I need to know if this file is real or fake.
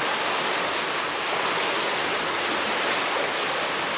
real